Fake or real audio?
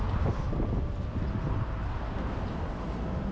real